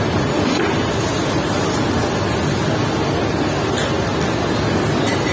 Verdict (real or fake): real